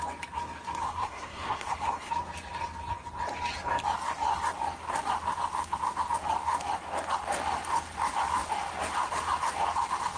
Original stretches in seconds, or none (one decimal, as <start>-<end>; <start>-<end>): 0.0-0.8; 2.1-10.2